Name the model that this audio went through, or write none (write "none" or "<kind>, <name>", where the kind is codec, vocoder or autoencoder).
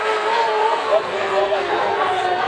codec, SNAC